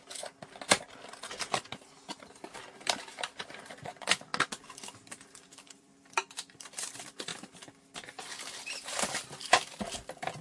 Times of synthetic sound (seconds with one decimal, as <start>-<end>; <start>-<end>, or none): 2.3-4.3; 5.0-7.3; 9.2-10.4